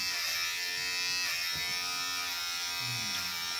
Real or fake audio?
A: real